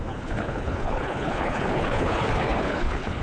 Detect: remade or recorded remade